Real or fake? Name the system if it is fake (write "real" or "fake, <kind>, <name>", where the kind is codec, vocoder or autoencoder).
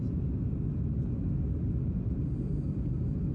real